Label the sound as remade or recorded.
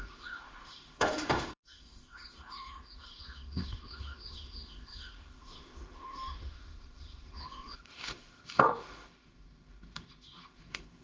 remade